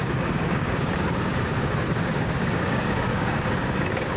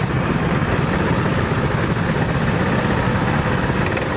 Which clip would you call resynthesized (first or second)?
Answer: first